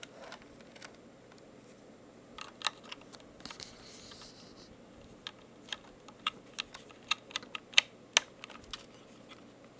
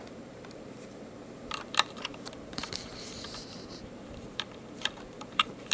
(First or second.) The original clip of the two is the first